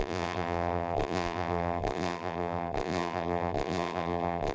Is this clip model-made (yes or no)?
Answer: yes